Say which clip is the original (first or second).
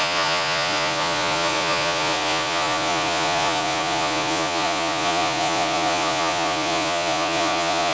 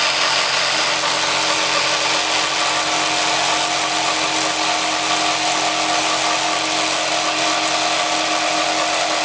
second